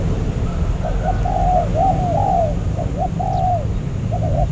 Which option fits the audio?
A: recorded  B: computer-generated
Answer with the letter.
A